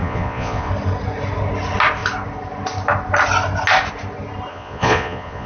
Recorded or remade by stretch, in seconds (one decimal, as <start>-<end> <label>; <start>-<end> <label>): 0.0-0.7 remade; 0.7-4.5 recorded; 4.5-5.5 remade